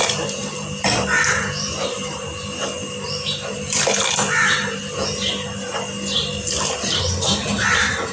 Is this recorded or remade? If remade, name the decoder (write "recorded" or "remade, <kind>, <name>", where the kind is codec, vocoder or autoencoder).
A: recorded